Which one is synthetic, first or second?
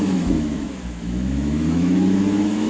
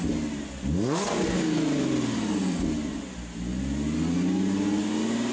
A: first